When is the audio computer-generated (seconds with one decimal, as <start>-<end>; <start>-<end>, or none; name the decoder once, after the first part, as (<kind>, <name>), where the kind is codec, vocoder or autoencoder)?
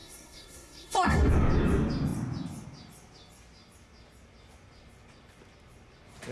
0.0-1.3 (codec, SNAC)